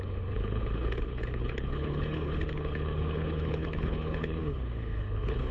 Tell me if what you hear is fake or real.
fake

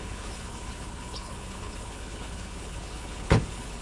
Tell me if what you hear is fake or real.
fake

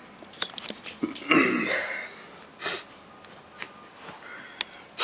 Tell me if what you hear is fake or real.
real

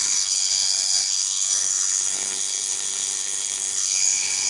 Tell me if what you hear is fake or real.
fake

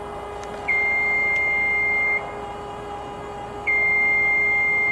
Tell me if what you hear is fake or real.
real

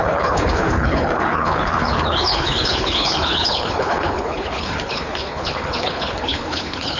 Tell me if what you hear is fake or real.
fake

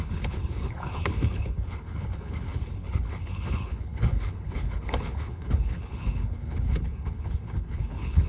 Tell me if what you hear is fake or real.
fake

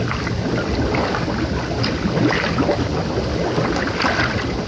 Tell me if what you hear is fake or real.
real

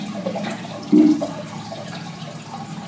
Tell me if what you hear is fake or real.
real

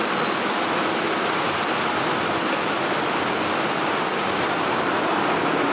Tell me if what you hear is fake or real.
real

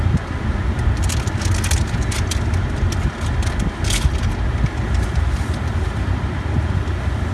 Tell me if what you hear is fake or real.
real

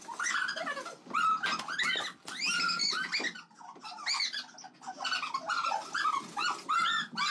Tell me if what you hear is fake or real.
real